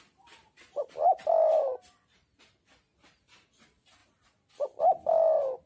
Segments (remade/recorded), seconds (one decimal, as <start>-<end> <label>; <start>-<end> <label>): 0.0-4.0 recorded; 4.0-4.8 remade; 4.8-5.7 recorded